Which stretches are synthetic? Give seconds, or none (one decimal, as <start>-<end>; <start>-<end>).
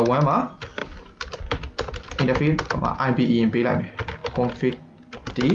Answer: none